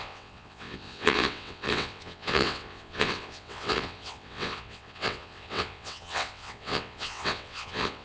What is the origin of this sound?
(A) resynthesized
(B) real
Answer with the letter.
A